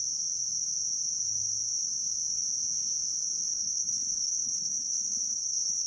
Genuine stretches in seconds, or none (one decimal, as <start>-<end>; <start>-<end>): 0.0-3.5